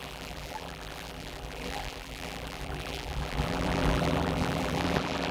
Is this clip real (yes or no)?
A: no